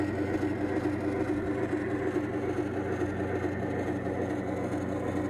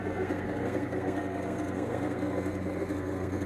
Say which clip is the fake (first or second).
second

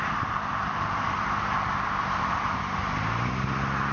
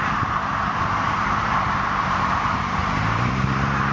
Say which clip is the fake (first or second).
second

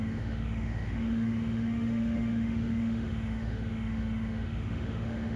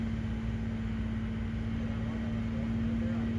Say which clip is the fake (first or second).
first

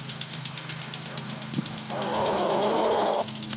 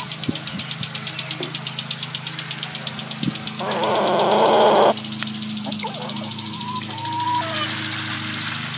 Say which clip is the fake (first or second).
first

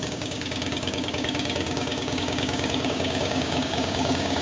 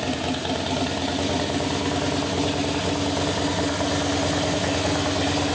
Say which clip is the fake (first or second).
first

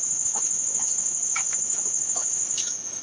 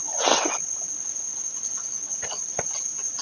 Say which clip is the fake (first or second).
first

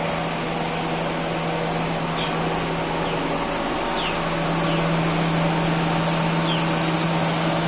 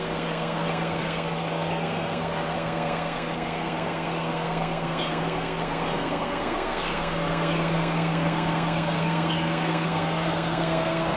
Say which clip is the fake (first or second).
second